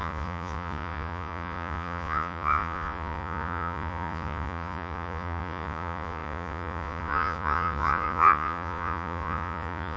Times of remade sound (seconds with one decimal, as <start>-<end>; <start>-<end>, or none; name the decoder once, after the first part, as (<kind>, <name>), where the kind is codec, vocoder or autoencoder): 0.0-10.0 (vocoder, Vocos)